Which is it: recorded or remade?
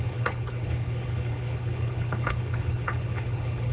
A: remade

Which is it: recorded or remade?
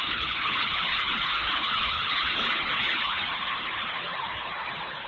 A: remade